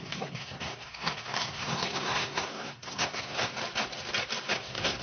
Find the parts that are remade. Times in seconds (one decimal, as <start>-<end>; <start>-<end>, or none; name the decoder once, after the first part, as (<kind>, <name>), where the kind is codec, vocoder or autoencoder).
0.0-3.5 (codec, SNAC); 4.5-5.0